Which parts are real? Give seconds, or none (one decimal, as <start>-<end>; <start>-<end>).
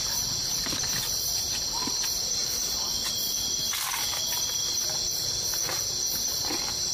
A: 2.4-6.4